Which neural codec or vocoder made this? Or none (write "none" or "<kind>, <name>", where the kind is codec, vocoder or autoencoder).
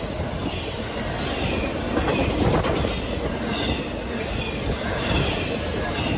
none